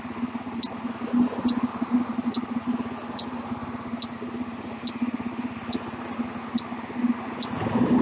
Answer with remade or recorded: recorded